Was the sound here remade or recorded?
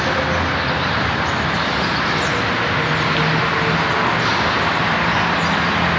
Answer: recorded